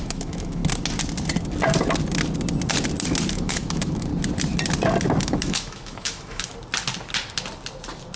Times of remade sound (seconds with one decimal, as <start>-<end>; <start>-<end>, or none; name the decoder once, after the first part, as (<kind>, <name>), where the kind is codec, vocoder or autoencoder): 0.0-0.6 (autoencoder, DAC-VAE); 3.3-4.1; 5.2-6.5